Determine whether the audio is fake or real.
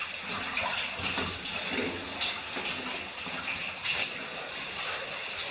real